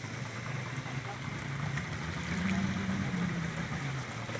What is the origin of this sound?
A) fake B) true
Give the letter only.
B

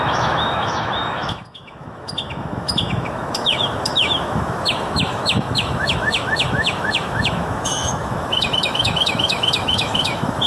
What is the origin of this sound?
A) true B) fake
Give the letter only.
B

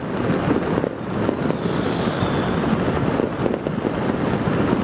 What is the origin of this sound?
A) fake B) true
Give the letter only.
B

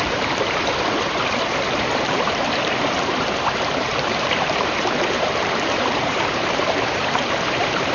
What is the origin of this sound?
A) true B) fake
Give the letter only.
B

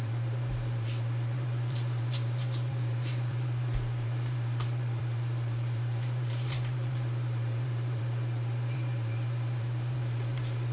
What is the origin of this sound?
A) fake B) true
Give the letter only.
A